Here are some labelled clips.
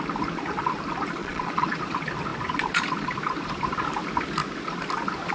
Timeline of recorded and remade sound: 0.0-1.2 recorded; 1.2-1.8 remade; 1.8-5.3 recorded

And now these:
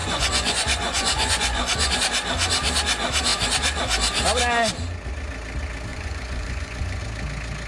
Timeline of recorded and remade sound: 0.0-1.9 remade; 1.9-5.9 recorded; 5.9-7.0 remade; 7.0-7.7 recorded

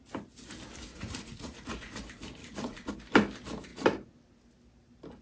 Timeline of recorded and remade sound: 0.0-0.9 recorded; 0.9-2.0 remade; 2.0-2.4 recorded; 2.4-2.9 remade; 2.9-5.2 recorded

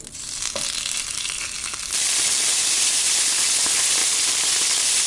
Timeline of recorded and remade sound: 0.0-5.1 recorded

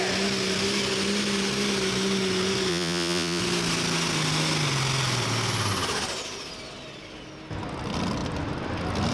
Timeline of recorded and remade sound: 0.0-2.7 recorded; 2.7-3.4 remade; 3.4-9.1 recorded

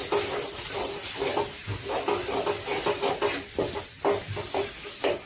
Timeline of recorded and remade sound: 0.0-5.3 recorded

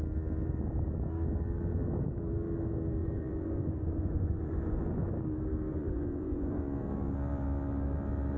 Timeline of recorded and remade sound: 0.0-3.0 recorded; 3.0-5.2 remade; 5.2-5.7 recorded; 5.7-6.6 remade; 6.6-8.4 recorded